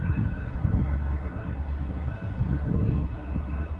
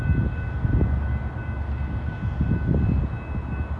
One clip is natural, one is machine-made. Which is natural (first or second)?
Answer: second